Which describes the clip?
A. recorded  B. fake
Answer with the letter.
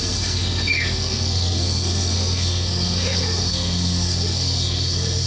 B